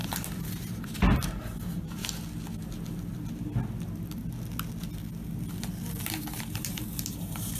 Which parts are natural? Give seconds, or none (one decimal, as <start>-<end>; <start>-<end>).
2.0-6.0